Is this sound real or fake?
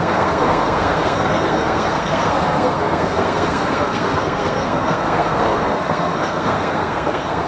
fake